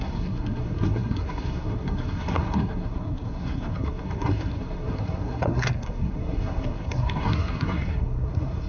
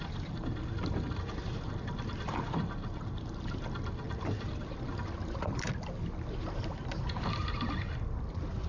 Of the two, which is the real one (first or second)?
second